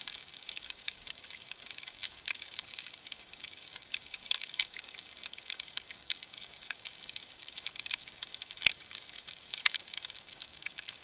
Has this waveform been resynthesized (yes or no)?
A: yes